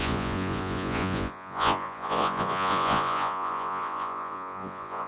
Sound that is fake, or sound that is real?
fake